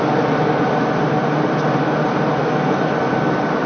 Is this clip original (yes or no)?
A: yes